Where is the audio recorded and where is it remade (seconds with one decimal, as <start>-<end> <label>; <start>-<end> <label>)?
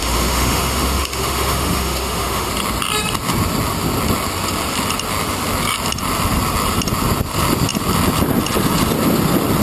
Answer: 0.0-2.5 remade; 2.5-9.6 recorded